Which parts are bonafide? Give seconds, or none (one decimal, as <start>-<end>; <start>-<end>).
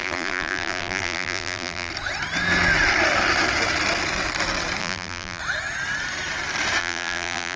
1.9-4.8; 5.4-6.8